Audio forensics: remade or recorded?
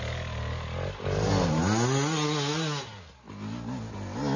recorded